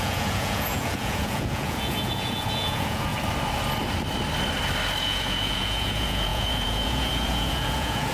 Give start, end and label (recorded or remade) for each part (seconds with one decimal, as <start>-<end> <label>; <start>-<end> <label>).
0.0-3.1 remade; 3.1-5.0 recorded; 5.0-8.1 remade